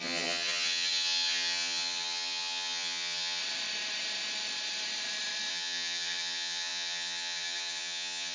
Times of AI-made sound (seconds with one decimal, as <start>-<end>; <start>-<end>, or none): 0.0-3.4; 5.5-8.3